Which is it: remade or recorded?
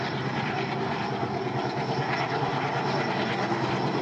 recorded